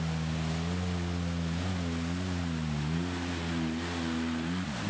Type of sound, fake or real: real